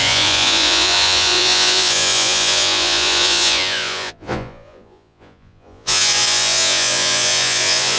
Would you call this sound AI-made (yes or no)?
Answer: yes